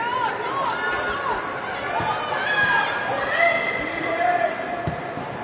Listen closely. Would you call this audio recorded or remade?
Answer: recorded